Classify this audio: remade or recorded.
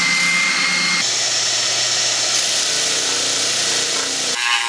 recorded